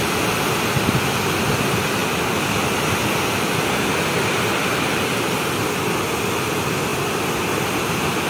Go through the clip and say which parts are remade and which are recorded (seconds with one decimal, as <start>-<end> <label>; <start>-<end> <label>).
0.0-8.3 recorded